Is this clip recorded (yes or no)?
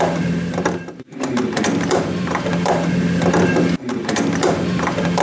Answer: no